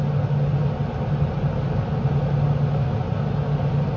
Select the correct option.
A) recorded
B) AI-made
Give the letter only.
A